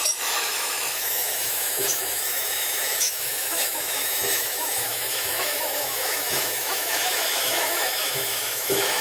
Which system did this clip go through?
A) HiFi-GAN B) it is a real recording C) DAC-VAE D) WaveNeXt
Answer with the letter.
C